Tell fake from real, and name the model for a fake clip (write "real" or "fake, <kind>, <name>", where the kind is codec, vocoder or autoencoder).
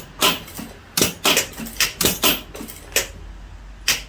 real